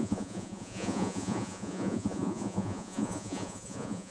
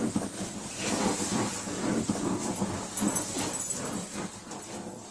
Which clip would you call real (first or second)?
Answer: second